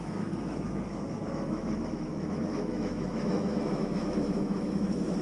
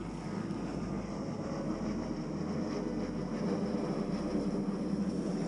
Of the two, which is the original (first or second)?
second